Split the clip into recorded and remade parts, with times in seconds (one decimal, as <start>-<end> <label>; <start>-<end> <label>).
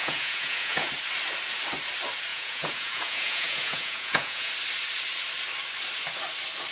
0.0-0.9 remade; 0.9-2.3 recorded; 2.3-4.5 remade; 4.5-6.7 recorded